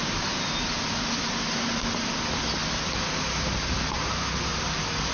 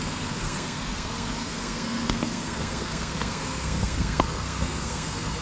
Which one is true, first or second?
first